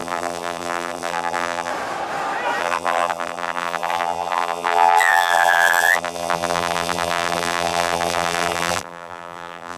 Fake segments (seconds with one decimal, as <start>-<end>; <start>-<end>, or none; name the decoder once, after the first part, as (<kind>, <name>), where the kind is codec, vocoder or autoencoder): 0.0-1.7 (vocoder, BigVGAN v2); 2.6-9.8